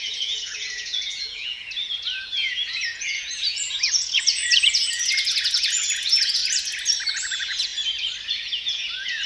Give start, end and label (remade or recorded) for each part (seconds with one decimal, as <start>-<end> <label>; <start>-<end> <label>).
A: 0.0-6.4 remade; 6.4-7.1 recorded; 7.1-7.7 remade; 7.7-8.3 recorded; 8.3-9.3 remade